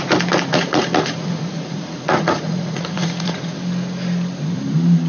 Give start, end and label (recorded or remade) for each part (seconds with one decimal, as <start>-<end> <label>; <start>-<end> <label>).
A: 0.0-0.5 recorded; 0.5-3.6 remade; 3.6-5.1 recorded